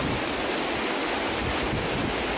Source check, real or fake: real